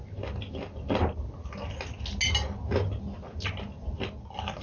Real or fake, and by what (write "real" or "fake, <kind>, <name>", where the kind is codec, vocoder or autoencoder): real